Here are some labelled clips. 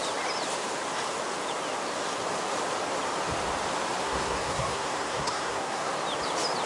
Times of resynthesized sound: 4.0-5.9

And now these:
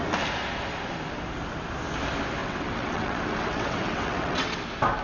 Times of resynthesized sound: 2.4-4.6

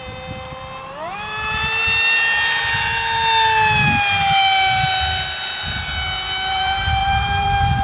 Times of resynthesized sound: 0.0-1.8; 6.5-7.8

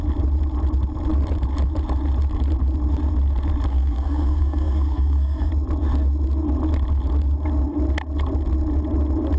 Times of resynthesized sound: 3.7-5.5

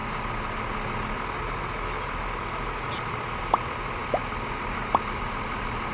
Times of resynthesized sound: none

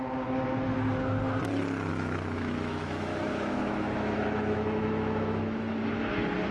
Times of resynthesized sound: 1.9-5.8